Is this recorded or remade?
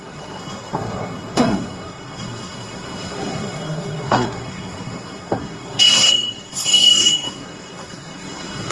remade